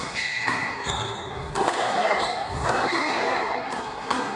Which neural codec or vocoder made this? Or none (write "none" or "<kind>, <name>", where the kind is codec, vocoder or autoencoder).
codec, SNAC